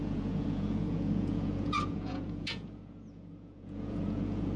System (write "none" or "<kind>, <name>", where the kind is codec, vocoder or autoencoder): vocoder, Vocos